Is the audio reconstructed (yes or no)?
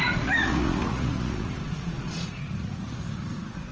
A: yes